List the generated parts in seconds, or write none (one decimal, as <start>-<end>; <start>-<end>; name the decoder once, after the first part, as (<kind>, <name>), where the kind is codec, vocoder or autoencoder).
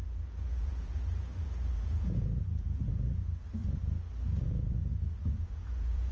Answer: 0.0-3.6 (vocoder, Vocos); 4.5-6.1